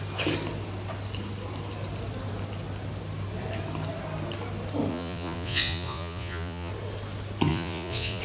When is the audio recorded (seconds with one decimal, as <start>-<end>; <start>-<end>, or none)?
0.0-4.9; 6.7-7.5